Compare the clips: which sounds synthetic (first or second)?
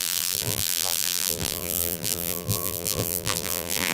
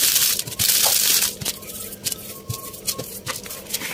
first